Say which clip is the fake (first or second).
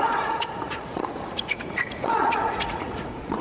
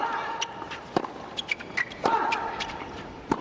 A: first